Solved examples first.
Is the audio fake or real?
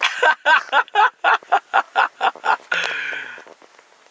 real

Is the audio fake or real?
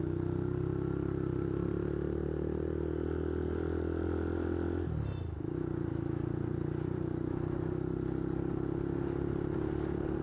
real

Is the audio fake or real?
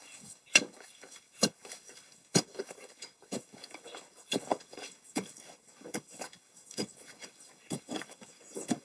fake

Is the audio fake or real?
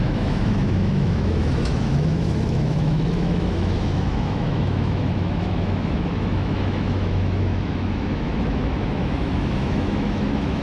fake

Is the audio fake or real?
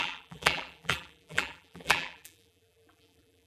fake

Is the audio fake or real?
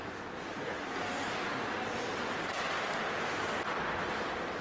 real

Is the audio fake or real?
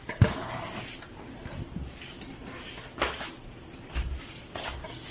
real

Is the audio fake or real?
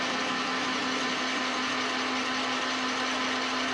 real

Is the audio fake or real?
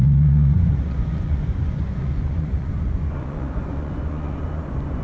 fake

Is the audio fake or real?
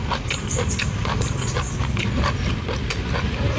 real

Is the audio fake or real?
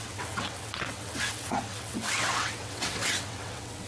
fake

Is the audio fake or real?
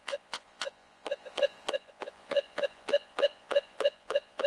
fake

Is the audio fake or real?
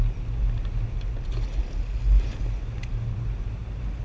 real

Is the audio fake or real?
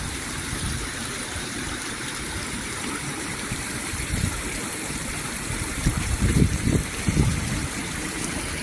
fake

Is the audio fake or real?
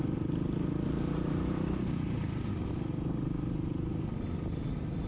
real